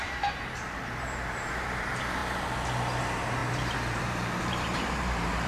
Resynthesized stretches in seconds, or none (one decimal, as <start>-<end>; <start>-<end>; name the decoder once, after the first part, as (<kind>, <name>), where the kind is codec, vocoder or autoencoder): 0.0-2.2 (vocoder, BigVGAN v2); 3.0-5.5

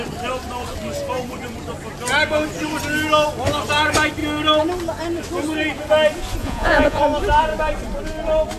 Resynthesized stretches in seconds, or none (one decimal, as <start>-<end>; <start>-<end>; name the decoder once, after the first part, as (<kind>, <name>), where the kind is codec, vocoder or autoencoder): 6.4-7.0 (vocoder, Vocos)

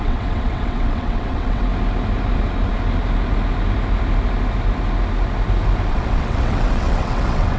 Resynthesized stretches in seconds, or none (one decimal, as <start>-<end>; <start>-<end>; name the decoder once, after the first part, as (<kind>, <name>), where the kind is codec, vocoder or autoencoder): 0.0-1.7 (vocoder, WaveNeXt); 5.9-7.6

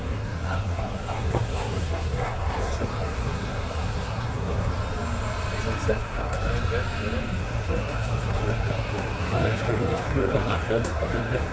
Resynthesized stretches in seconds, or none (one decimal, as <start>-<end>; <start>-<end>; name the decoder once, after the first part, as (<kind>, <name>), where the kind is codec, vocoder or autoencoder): 0.0-4.7 (codec, SNAC); 5.9-6.5; 7.4-11.5

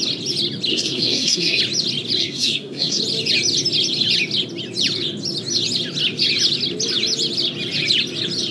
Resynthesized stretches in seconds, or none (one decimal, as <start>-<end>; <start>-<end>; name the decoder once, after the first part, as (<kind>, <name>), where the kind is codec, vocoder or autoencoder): 0.7-1.6 (codec, SNAC); 2.2-3.0

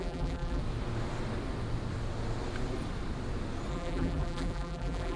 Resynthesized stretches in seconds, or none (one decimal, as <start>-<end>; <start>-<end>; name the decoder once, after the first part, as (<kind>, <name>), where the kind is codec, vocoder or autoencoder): 0.0-0.6 (vocoder, BigVGAN v2); 3.7-5.2